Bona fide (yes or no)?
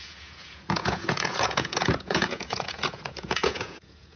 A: no